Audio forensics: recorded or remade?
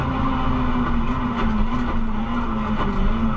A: recorded